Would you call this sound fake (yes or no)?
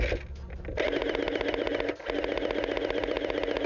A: no